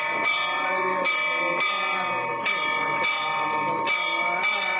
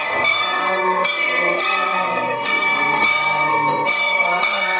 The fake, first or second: second